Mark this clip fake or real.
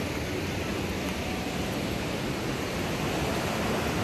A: real